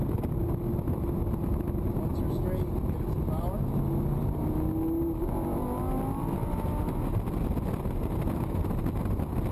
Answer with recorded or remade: recorded